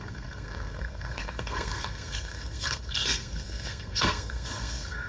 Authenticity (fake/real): fake